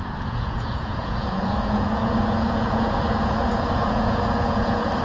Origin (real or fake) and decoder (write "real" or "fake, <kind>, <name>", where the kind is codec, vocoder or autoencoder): fake, vocoder, Vocos